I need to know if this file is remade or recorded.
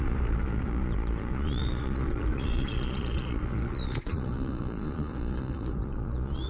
remade